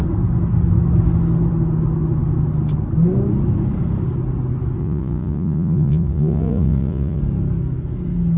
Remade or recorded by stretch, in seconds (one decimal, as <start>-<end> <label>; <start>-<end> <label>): 0.0-4.8 recorded; 4.8-7.2 remade; 7.2-8.4 recorded